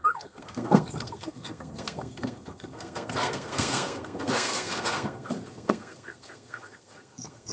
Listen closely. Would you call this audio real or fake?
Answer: fake